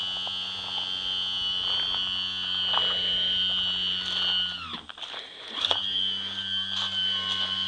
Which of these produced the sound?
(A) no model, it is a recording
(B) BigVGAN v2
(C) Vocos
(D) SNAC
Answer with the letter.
A